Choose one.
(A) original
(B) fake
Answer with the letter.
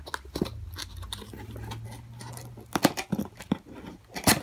A